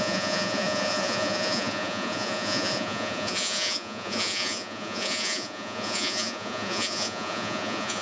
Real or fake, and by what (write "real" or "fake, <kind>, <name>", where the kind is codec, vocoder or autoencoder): fake, vocoder, Vocos